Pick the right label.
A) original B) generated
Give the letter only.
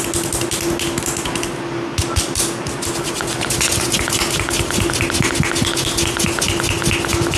A